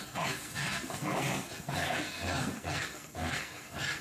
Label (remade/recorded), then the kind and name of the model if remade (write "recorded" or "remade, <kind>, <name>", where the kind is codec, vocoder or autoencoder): remade, codec, SNAC